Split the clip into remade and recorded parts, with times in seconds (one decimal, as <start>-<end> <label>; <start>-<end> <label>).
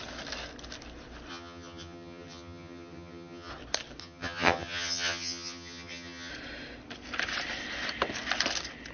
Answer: 0.0-1.3 recorded; 1.3-3.5 remade; 3.5-4.0 recorded; 4.0-6.3 remade; 6.3-8.9 recorded